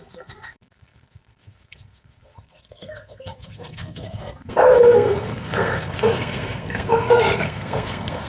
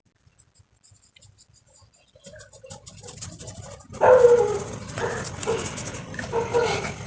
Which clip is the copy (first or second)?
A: first